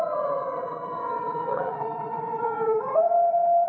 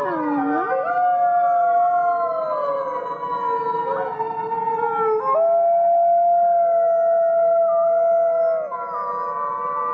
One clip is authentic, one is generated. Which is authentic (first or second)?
second